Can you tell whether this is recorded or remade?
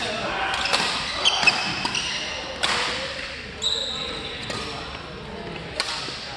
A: recorded